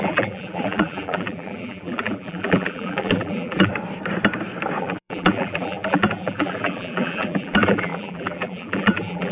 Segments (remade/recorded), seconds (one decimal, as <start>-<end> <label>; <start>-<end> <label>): 0.0-3.7 remade; 3.7-4.8 recorded; 4.8-9.3 remade